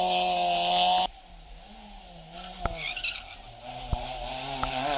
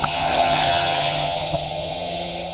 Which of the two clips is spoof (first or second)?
second